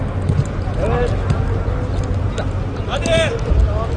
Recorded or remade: recorded